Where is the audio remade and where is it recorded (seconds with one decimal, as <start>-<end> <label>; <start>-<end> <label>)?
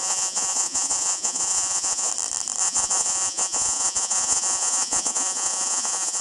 0.0-2.1 remade; 2.1-2.6 recorded; 2.6-6.2 remade